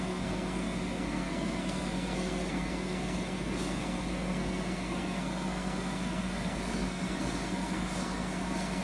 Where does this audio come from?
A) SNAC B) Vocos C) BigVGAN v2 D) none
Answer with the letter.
A